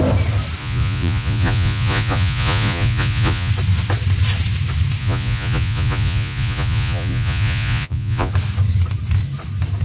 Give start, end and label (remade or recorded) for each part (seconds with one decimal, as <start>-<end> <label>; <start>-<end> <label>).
0.0-0.6 recorded; 0.6-3.5 remade; 3.5-5.0 recorded; 5.0-8.3 remade; 8.3-9.8 recorded